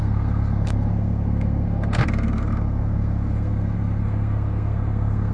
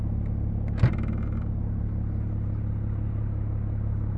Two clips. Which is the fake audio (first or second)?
first